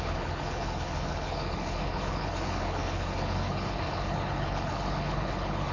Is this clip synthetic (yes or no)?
yes